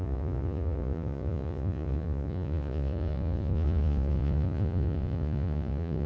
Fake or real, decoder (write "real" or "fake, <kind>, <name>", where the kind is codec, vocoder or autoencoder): fake, vocoder, Vocos